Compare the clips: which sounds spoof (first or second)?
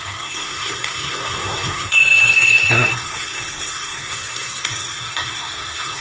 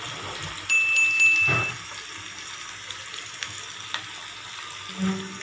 first